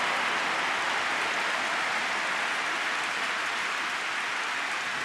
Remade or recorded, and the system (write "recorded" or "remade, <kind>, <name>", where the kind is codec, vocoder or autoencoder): recorded